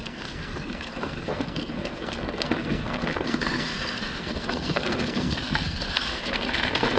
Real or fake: fake